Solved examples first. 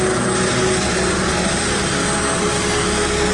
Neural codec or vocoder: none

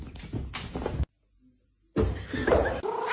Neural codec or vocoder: none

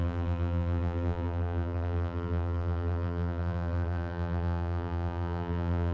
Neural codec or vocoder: vocoder, BigVGAN v2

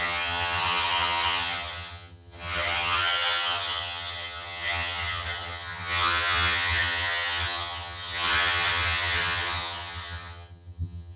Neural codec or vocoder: vocoder, HiFi-GAN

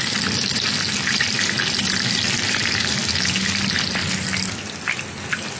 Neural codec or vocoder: none